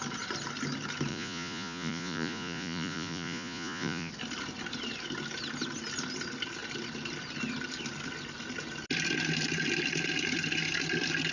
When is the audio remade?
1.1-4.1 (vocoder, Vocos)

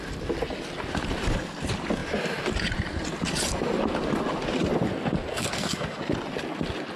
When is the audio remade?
5.3-6.0 (codec, SNAC)